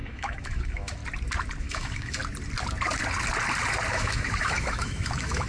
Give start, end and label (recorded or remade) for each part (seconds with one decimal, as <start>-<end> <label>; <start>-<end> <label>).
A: 0.0-1.0 remade; 1.0-1.6 recorded; 1.6-2.2 remade; 2.2-3.9 recorded; 3.9-5.5 remade